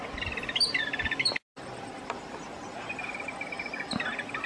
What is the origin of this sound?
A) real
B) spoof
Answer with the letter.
A